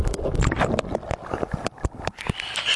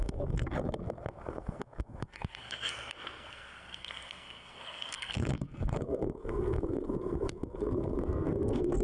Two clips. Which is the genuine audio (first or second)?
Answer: first